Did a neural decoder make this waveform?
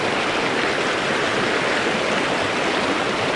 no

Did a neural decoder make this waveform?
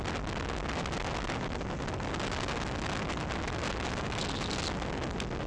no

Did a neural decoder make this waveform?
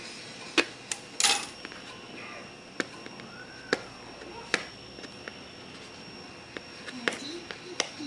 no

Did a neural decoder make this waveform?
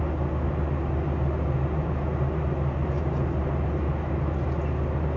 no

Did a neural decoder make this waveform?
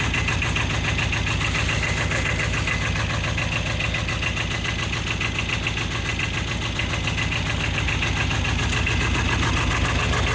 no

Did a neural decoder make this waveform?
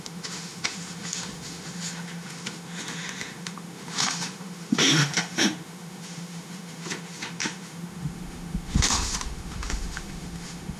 yes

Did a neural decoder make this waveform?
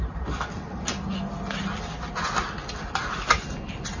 no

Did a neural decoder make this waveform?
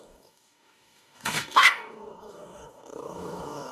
yes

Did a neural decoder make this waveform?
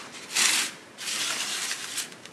yes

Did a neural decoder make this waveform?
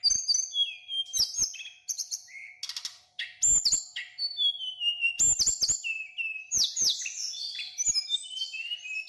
no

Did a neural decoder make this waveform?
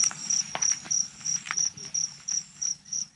yes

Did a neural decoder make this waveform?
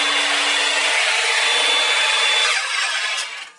no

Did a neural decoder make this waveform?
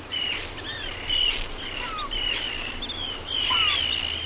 no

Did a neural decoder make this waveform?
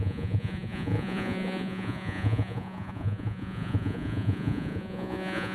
yes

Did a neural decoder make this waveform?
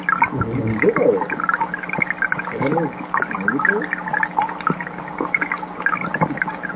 no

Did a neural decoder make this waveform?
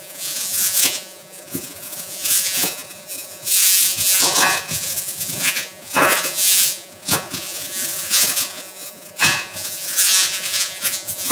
yes